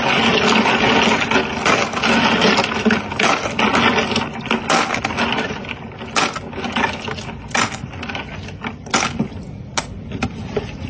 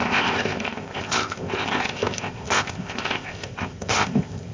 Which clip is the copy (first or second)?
second